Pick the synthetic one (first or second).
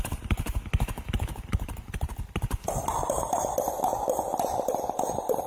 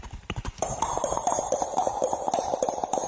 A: second